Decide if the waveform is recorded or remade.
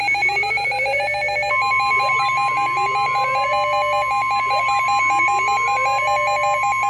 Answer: recorded